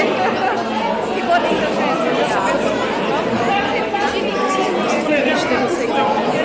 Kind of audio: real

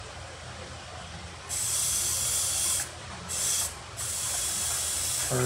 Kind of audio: real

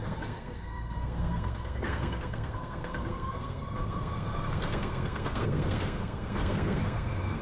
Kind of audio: fake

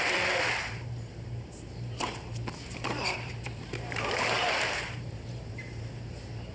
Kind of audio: fake